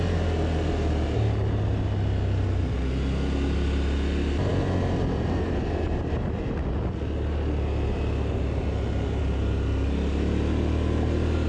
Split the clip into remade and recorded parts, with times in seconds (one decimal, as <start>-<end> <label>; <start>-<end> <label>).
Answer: 0.0-11.5 recorded